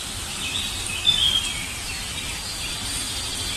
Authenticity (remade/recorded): recorded